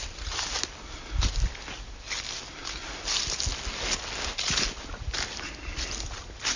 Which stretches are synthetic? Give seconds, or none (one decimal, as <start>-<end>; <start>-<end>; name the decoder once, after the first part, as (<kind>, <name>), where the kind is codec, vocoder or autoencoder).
none